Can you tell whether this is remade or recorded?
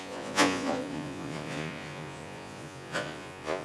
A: remade